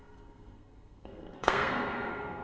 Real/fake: fake